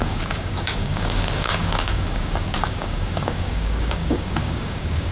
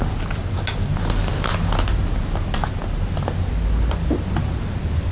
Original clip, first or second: second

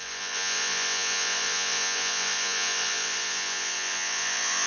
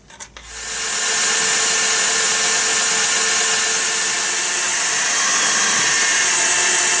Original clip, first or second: second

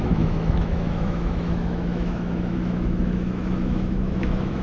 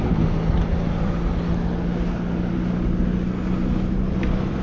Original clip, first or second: second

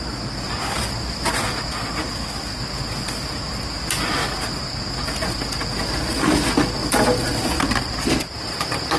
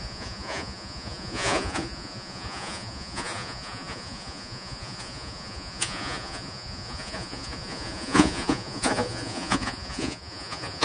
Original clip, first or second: first